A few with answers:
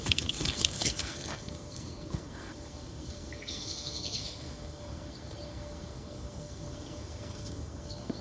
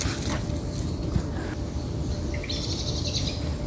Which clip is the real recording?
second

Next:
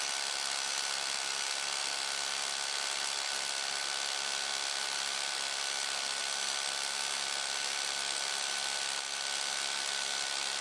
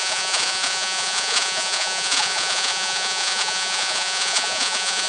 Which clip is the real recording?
first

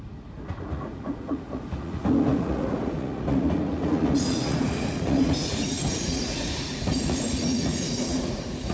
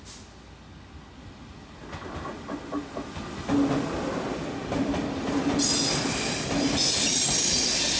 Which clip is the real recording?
second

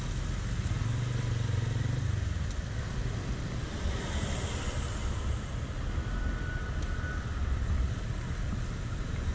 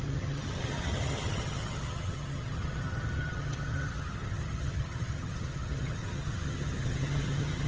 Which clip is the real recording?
first